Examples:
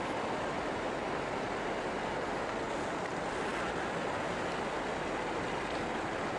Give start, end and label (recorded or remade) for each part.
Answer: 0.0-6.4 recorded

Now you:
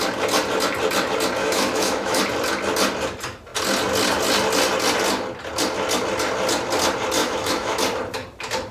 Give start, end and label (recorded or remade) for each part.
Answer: 0.0-1.4 recorded; 1.4-2.2 remade; 2.2-7.2 recorded; 7.2-7.8 remade; 7.8-8.7 recorded